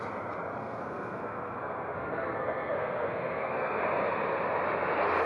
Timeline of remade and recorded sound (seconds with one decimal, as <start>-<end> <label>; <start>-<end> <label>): 0.0-0.6 recorded; 0.6-3.8 remade; 3.8-5.3 recorded